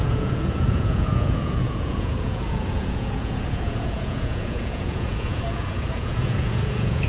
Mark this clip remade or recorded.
remade